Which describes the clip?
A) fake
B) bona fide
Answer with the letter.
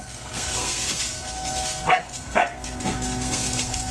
A